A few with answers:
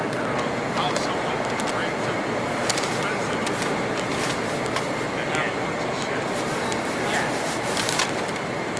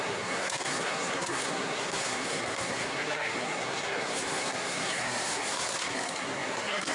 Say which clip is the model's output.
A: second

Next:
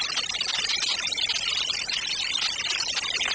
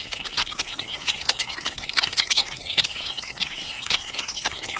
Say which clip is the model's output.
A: second